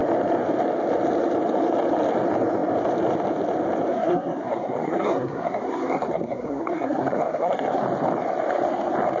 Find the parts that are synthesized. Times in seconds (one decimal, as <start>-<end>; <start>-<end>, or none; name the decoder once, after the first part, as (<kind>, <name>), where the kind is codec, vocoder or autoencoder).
3.9-7.8 (codec, SNAC)